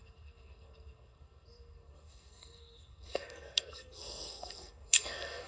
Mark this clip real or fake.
fake